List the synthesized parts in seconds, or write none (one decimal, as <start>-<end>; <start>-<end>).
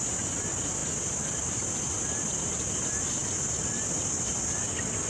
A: none